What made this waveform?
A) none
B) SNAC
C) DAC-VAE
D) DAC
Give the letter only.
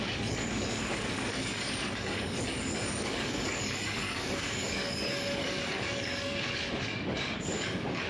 D